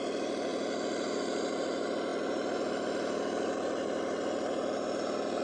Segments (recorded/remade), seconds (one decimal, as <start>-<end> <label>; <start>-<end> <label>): 0.0-5.4 recorded